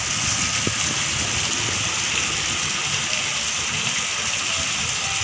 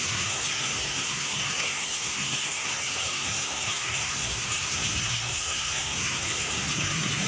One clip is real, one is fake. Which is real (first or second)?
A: first